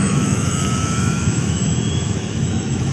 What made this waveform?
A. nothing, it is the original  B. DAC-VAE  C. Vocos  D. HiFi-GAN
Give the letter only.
B